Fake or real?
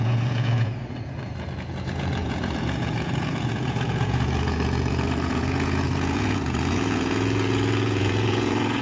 fake